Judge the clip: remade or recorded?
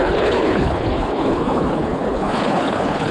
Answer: remade